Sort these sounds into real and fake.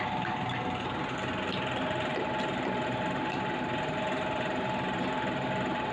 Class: real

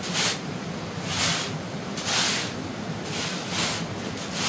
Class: real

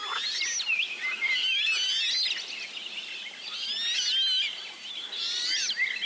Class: real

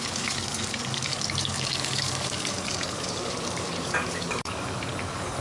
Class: fake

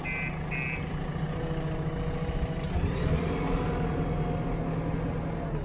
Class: real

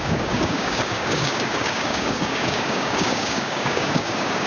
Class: fake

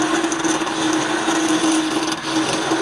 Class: real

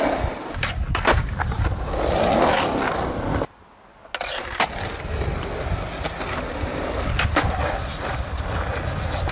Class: real